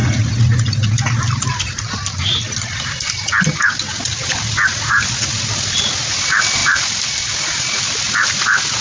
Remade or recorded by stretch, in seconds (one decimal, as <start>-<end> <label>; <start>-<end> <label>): 0.0-8.8 recorded